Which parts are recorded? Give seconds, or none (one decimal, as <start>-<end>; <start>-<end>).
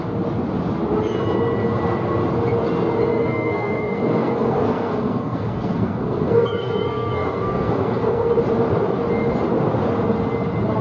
0.0-3.1; 8.3-10.8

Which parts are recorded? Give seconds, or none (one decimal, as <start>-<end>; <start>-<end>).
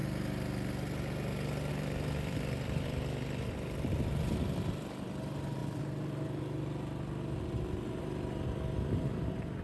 0.0-1.7; 5.6-8.0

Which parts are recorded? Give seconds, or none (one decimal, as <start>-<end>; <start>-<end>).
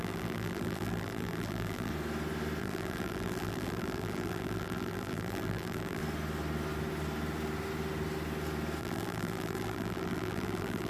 1.9-2.6; 6.0-8.8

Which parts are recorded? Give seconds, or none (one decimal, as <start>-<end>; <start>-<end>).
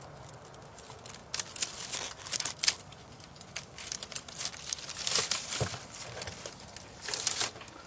0.0-3.0; 3.5-7.9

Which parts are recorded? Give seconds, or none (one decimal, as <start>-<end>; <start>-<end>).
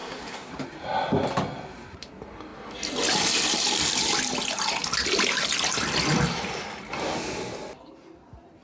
0.5-8.6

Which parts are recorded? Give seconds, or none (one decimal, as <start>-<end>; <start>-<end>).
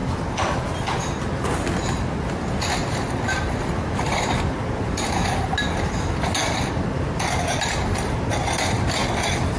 0.0-9.6